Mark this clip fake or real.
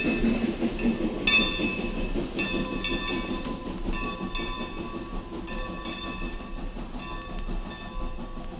real